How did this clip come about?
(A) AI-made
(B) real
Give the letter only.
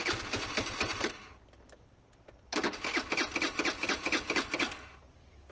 B